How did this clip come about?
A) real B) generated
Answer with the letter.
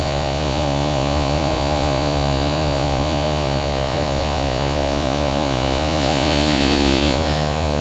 B